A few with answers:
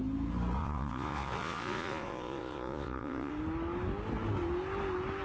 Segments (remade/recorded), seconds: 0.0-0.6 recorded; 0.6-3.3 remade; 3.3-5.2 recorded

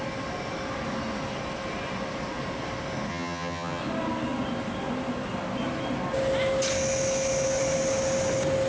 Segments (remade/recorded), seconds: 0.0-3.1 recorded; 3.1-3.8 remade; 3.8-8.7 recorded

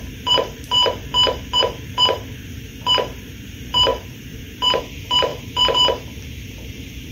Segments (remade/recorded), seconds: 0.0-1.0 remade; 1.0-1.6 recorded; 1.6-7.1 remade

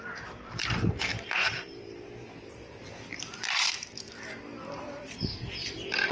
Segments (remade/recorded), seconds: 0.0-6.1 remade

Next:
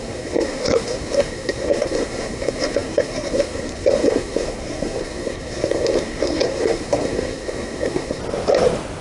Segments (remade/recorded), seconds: 0.0-8.2 remade; 8.2-9.0 recorded

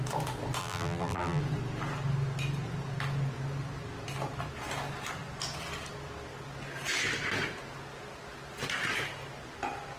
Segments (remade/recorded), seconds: 0.0-0.6 recorded; 0.6-1.4 remade; 1.4-10.0 recorded